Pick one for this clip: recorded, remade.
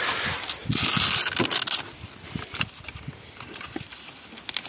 recorded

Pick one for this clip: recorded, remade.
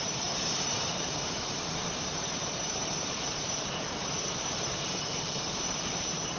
remade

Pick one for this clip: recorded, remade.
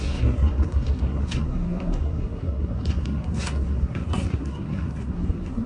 remade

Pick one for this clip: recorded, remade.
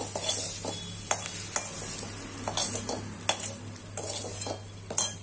recorded